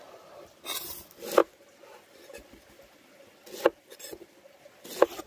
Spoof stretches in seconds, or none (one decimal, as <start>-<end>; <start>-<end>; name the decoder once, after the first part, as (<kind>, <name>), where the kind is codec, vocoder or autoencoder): none